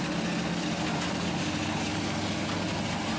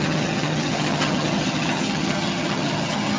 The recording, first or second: first